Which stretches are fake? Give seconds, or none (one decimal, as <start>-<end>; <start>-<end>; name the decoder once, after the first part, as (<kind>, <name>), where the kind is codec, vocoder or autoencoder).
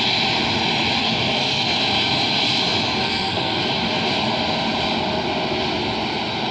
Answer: 1.0-1.8 (codec, SNAC); 3.0-3.6